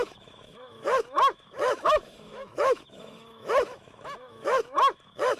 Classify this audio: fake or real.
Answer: fake